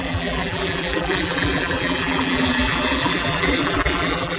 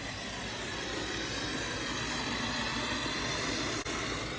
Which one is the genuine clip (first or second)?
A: second